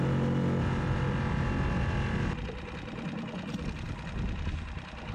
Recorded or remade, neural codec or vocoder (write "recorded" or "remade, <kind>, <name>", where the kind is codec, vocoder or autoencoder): recorded